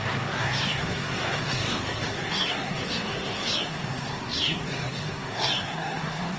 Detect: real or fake fake